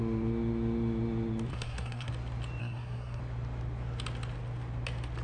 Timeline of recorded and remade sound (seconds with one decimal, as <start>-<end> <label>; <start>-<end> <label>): 0.0-1.5 recorded; 1.5-2.1 remade; 2.1-2.6 recorded; 2.6-3.2 remade; 3.2-5.2 recorded